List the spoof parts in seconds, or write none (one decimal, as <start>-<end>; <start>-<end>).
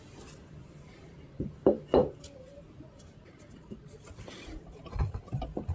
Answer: none